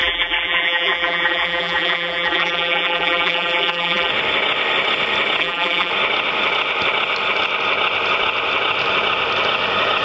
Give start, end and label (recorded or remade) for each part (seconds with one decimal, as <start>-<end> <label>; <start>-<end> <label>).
0.0-4.1 remade; 4.1-5.4 recorded; 5.4-5.9 remade; 5.9-10.0 recorded